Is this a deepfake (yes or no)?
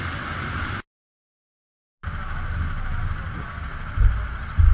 no